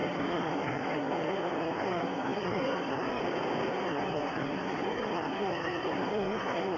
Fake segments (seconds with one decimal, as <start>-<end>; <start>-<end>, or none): 0.0-3.2; 3.7-6.8